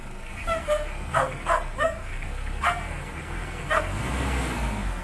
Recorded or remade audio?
remade